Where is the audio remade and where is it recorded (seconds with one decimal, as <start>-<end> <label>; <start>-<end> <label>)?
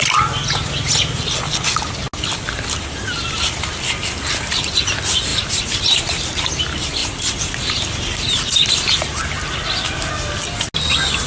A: 0.0-5.3 recorded; 5.3-6.1 remade; 6.1-11.3 recorded